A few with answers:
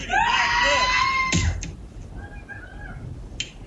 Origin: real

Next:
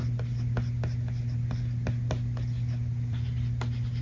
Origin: real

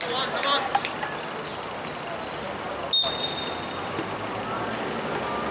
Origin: real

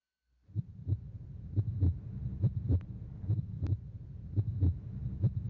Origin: real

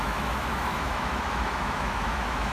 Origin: fake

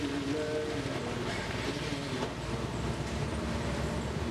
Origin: real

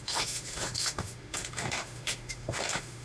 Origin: fake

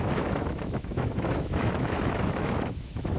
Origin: fake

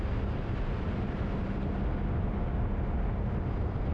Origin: real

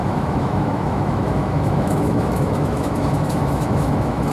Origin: fake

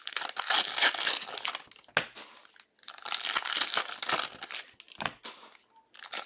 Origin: real